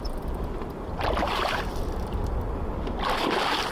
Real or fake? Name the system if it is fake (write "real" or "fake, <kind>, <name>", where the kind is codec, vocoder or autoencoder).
real